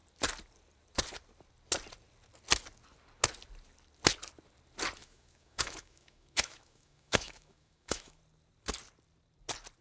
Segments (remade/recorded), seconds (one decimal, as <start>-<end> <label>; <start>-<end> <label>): 0.0-5.0 recorded; 5.0-8.2 remade; 8.2-9.8 recorded